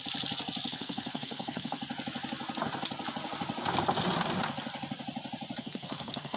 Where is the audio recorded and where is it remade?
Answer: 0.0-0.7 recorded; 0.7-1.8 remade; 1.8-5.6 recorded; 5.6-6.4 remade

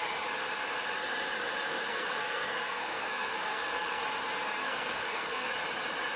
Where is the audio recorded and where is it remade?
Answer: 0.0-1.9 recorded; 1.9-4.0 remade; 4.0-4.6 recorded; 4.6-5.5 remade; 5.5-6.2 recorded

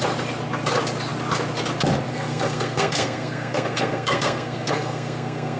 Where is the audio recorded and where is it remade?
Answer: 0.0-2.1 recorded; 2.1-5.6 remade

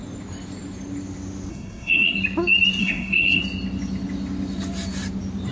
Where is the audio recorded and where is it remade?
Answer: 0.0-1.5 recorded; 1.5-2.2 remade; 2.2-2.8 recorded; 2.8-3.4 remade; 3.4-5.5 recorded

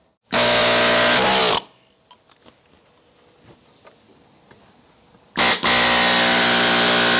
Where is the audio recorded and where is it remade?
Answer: 0.0-7.2 recorded

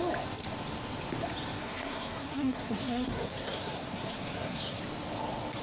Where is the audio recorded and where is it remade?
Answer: 0.0-1.6 recorded; 1.6-4.8 remade; 4.8-5.6 recorded